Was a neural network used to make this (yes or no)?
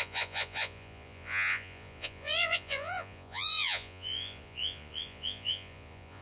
yes